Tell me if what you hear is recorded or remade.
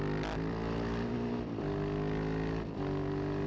recorded